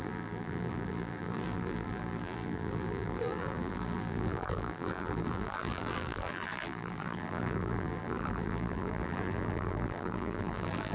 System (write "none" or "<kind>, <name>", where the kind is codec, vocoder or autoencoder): vocoder, BigVGAN v2